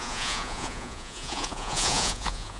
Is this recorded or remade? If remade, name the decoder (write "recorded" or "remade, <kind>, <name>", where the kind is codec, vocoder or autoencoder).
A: remade, vocoder, Vocos